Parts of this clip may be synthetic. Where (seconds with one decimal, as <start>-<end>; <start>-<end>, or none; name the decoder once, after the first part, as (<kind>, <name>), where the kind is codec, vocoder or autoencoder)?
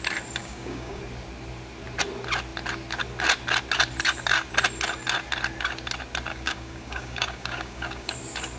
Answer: 0.4-1.0 (codec, DAC); 6.3-8.1